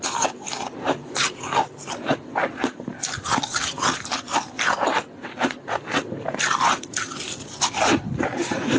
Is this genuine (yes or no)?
yes